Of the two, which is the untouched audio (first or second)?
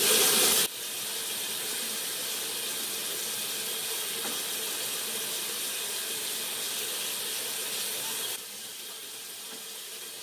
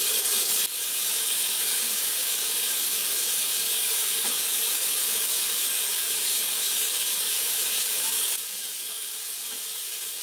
first